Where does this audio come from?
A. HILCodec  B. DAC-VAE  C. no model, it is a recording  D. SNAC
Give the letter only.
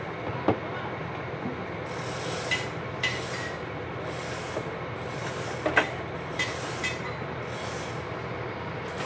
C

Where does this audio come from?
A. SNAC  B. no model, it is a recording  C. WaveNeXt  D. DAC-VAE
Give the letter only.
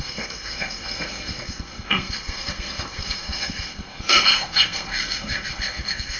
A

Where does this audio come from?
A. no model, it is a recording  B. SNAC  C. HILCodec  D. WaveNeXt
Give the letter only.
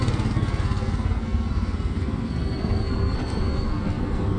B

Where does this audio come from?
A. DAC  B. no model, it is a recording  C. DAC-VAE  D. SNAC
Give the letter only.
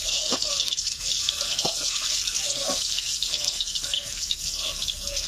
D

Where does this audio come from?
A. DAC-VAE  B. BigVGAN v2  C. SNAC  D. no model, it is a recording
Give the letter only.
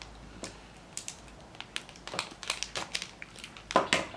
D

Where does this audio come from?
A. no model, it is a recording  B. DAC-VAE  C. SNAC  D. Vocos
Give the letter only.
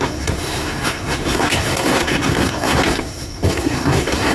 C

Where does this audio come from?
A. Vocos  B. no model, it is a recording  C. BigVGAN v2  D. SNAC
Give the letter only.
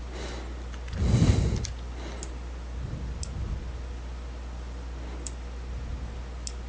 B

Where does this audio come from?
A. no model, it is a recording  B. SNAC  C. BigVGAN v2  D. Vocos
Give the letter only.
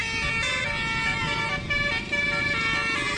A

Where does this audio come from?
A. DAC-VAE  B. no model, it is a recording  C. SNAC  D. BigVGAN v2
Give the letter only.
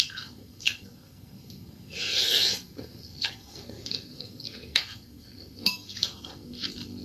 C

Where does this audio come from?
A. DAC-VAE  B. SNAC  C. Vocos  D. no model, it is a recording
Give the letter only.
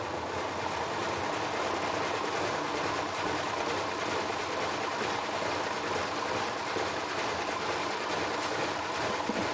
D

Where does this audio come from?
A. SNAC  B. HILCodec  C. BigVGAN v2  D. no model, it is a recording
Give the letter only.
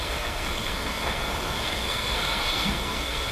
A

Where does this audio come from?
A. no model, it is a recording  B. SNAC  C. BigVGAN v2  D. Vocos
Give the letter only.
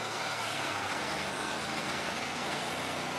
B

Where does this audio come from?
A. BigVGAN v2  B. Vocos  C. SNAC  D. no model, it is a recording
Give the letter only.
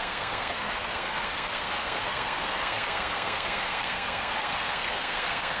C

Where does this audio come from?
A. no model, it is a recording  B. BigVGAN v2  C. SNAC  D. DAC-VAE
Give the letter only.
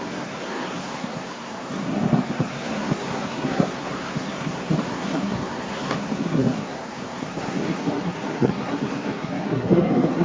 C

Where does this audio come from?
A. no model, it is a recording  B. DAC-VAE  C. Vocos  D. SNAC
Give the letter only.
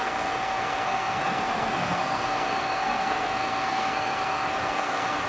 D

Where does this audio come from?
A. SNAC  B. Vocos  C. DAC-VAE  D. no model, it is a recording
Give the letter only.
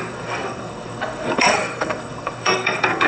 A